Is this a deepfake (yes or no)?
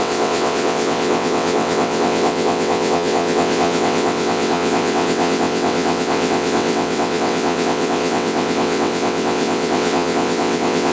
yes